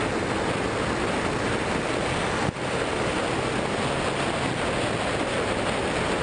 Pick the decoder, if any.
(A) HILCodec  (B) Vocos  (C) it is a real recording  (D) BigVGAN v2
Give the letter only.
C